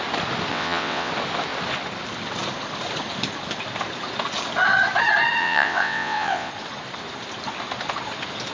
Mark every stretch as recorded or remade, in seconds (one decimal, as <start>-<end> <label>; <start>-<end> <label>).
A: 0.0-0.5 recorded; 0.5-1.1 remade; 1.1-5.4 recorded; 5.4-6.5 remade; 6.5-8.5 recorded

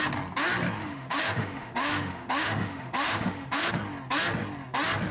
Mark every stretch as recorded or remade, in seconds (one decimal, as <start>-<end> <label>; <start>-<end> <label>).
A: 0.0-0.8 recorded; 0.8-3.7 remade; 3.7-5.1 recorded

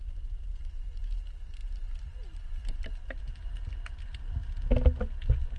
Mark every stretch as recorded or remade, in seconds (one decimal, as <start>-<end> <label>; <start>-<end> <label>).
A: 0.0-5.6 recorded

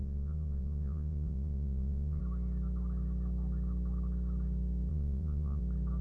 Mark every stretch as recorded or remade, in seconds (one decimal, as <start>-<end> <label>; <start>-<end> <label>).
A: 0.0-2.2 remade; 2.2-4.9 recorded; 4.9-5.6 remade; 5.6-6.0 recorded

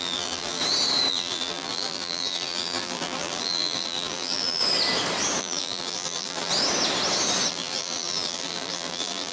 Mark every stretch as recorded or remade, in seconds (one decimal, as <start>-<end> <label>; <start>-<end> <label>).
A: 0.0-0.6 remade; 0.6-1.1 recorded; 1.1-4.6 remade; 4.6-5.4 recorded; 5.4-6.5 remade; 6.5-7.5 recorded; 7.5-9.3 remade

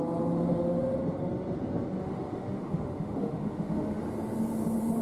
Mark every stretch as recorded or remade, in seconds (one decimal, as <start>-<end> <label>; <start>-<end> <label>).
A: 0.0-2.0 recorded; 2.0-4.0 remade; 4.0-5.0 recorded